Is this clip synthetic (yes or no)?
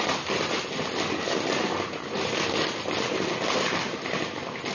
no